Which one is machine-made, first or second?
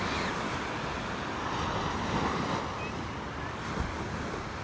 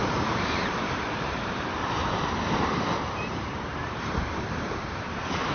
second